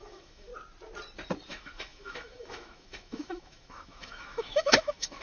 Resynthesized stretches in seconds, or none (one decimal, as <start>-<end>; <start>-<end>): 0.0-0.5; 1.5-5.2